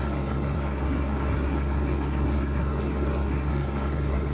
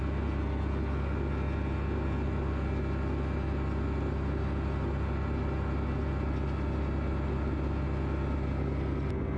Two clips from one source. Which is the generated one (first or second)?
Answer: first